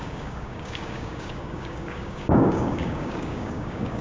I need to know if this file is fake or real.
fake